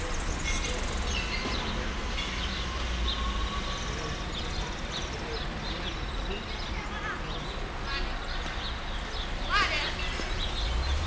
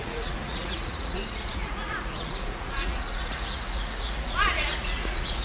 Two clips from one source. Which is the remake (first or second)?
second